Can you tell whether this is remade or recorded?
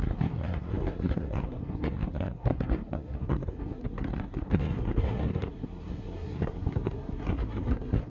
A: remade